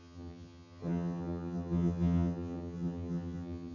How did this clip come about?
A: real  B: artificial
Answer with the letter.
B